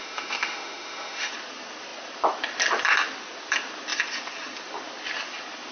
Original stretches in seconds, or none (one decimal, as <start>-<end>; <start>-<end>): 1.3-5.7